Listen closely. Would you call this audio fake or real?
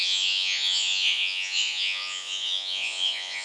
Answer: fake